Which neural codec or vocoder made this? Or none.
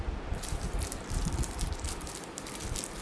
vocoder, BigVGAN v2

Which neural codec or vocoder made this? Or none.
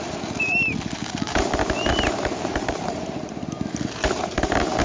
vocoder, BigVGAN v2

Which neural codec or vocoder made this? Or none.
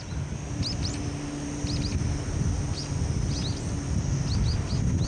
none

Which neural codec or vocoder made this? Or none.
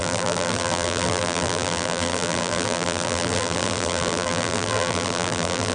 vocoder, BigVGAN v2